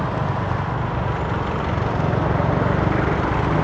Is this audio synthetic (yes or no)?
no